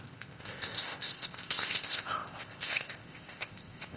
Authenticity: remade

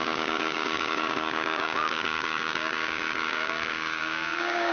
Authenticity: remade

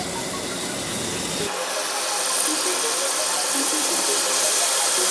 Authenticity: recorded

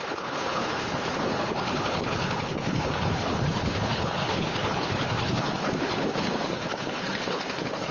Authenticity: remade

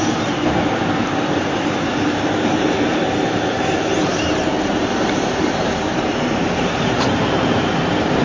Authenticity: remade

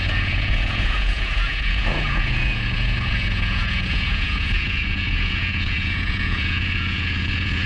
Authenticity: remade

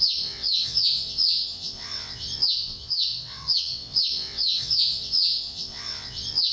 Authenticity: remade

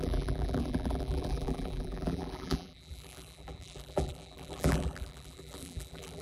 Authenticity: remade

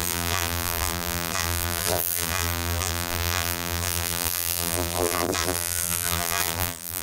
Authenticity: remade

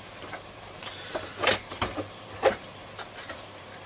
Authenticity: remade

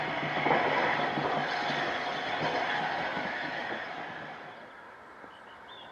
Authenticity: recorded